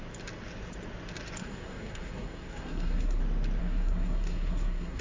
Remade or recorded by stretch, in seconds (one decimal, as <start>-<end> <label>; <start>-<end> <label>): 0.0-1.4 recorded; 1.4-3.2 remade; 3.2-3.6 recorded; 3.6-5.0 remade